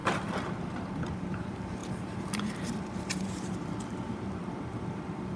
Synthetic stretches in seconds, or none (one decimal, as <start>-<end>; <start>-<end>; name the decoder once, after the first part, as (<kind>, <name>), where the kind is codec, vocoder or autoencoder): 0.6-5.4 (vocoder, BigVGAN v2)